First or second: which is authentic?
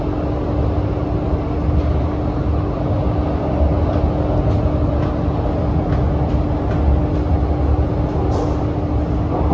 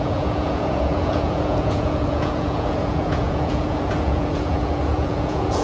first